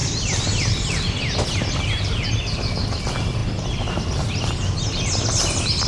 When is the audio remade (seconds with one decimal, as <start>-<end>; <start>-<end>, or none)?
none